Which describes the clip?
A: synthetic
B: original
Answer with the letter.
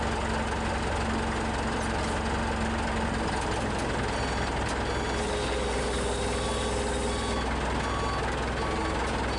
B